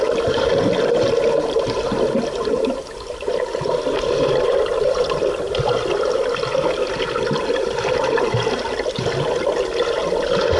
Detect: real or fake real